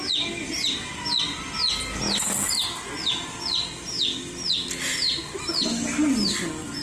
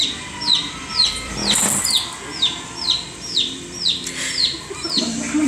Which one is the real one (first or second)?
first